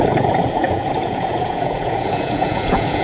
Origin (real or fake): fake